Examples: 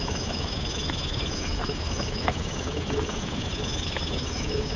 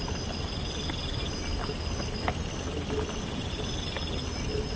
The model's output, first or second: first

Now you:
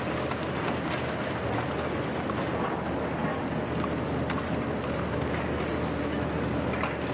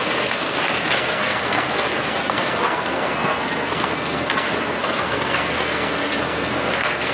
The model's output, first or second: second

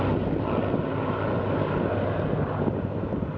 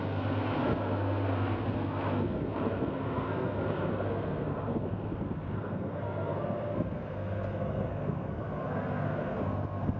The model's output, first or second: second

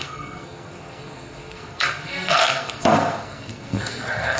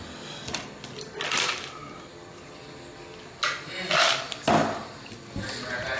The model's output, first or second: first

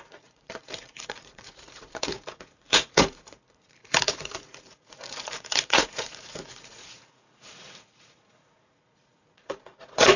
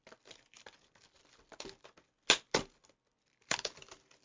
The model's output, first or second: first